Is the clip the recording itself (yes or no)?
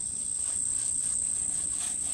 no